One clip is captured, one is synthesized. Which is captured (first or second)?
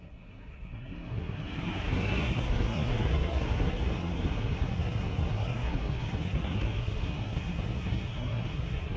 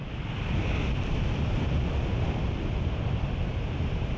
second